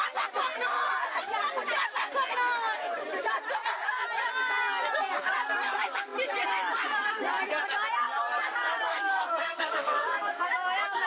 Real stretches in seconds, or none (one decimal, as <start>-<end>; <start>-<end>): 0.0-9.1; 10.5-11.1